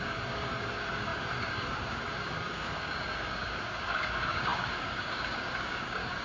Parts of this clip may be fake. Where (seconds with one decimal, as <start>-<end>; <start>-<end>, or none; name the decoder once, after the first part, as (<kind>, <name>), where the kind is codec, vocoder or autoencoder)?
0.0-6.2 (codec, DAC)